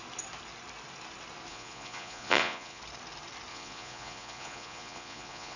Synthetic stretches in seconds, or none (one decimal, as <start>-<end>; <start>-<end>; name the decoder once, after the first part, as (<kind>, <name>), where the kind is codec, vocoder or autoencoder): 1.5-2.8 (vocoder, Vocos); 3.5-5.6